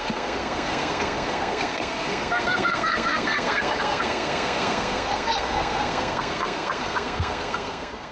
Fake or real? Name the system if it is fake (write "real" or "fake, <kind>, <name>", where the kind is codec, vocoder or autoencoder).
fake, codec, SNAC